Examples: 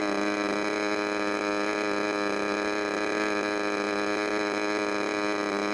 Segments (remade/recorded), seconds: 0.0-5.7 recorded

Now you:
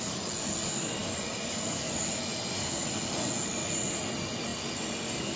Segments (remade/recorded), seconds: 0.0-5.4 recorded

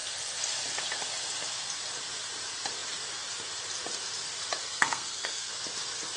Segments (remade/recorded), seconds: 0.0-4.6 recorded; 4.6-5.5 remade; 5.5-6.2 recorded

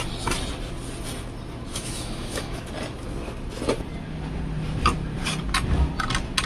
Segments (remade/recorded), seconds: 0.0-1.7 recorded; 1.7-2.7 remade; 2.7-6.5 recorded